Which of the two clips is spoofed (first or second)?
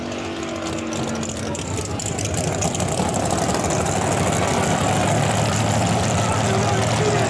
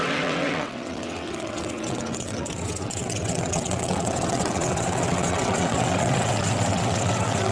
second